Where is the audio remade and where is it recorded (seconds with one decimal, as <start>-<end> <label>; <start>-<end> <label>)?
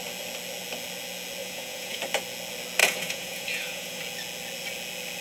0.0-1.4 recorded; 1.4-2.0 remade; 2.0-2.8 recorded; 2.8-4.0 remade; 4.0-5.2 recorded